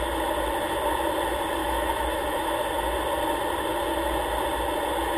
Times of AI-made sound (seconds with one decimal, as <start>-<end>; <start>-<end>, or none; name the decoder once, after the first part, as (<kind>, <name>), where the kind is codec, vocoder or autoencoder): 1.6-2.5 (autoencoder, DAC-VAE)

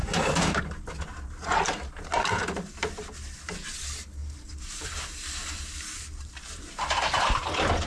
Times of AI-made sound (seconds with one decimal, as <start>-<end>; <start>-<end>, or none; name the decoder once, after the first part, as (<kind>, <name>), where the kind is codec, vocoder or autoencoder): 0.0-0.6 (vocoder, BigVGAN v2); 4.2-6.4

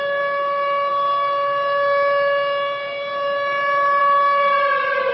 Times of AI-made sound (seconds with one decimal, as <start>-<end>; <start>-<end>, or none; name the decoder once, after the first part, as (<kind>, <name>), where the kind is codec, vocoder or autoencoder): none